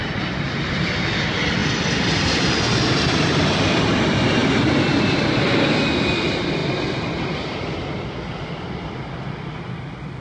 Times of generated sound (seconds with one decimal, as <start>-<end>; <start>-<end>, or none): none

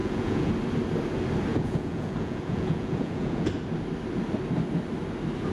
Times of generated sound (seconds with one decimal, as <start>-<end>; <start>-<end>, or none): 0.0-0.5; 1.5-3.5

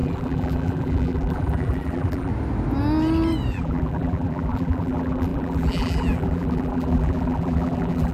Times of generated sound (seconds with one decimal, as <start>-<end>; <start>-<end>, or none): 0.0-2.3; 3.5-8.1

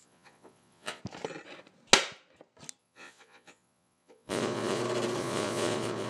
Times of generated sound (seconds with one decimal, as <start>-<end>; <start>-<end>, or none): 0.0-1.0; 2.8-4.8; 5.2-6.1

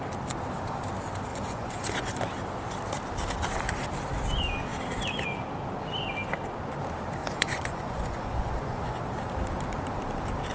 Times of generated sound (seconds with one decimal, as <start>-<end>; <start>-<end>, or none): 1.3-2.2; 7.2-9.0

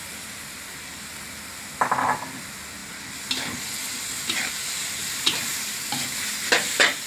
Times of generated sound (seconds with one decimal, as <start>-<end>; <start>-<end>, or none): 5.0-5.8

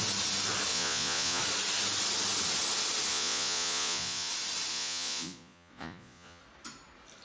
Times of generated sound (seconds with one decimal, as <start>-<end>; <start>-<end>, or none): 0.7-1.4; 3.1-4.3; 4.7-6.4

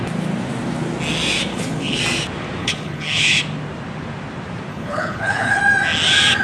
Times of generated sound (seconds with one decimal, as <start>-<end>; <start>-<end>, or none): 1.5-2.0; 2.6-3.4; 4.7-5.6